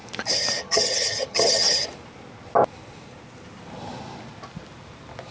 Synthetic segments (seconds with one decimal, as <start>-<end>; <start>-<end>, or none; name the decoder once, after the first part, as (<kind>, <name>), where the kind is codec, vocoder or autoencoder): 0.6-1.8 (vocoder, HiFi-GAN)

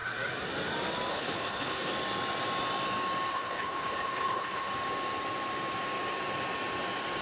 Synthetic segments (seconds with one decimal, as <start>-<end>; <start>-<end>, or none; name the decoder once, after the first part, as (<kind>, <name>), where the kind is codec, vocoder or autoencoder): 1.1-1.9 (codec, HILCodec); 3.3-4.7